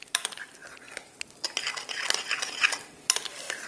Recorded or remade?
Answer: recorded